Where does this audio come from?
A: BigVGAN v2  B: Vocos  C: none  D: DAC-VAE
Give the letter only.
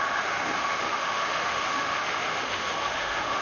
D